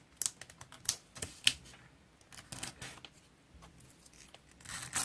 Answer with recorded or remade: recorded